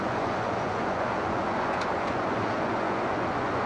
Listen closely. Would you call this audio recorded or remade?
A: remade